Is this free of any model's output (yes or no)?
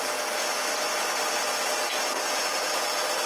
yes